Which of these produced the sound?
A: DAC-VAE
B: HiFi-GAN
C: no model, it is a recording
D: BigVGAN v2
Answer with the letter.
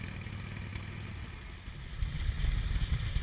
C